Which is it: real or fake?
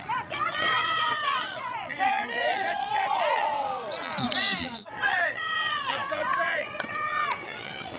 fake